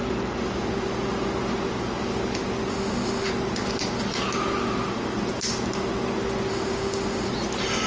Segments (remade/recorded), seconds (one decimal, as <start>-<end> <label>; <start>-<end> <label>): 0.0-2.7 recorded; 2.7-3.3 remade; 3.3-6.5 recorded; 6.5-7.3 remade; 7.3-7.9 recorded